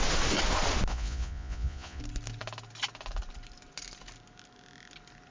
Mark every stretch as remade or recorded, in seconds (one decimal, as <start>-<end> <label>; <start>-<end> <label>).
0.0-0.9 recorded; 0.9-2.0 remade; 2.0-5.3 recorded